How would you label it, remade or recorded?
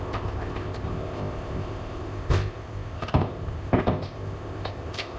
remade